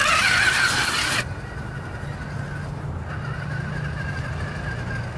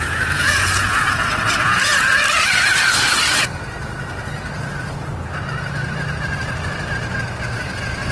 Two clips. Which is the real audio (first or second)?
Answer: first